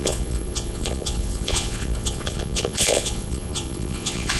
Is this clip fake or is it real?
fake